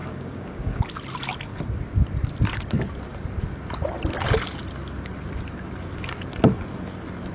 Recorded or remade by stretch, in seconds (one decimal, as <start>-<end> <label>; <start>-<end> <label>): 0.0-0.8 remade; 0.8-7.3 recorded